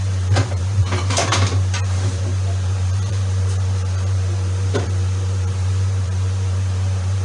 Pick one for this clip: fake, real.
fake